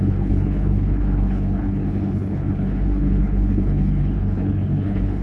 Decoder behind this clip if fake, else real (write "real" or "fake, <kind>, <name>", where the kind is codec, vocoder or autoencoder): fake, codec, HILCodec